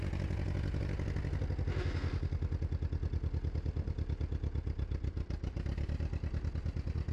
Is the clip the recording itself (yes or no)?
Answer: yes